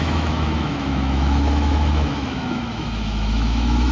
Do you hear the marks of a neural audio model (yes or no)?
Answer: yes